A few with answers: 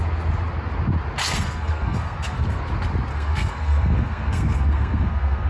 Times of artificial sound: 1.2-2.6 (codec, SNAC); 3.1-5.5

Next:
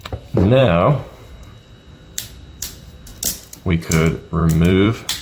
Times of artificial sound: 0.0-0.6 (vocoder, BigVGAN v2); 1.6-3.1; 3.9-5.2

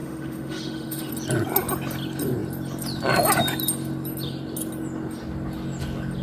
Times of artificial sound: 0.0-1.1 (autoencoder, DAC-VAE)

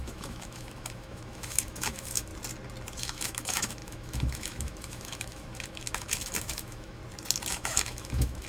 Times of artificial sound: 0.0-2.3 (autoencoder, DAC-VAE); 3.0-7.0; 7.5-8.5

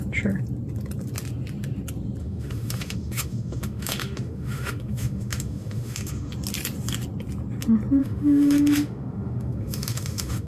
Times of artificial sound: 2.2-6.3 (autoencoder, DAC-VAE); 8.0-10.5

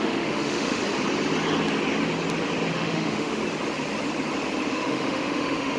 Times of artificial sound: 0.0-0.8 (autoencoder, DAC-VAE); 2.7-3.4; 4.7-5.8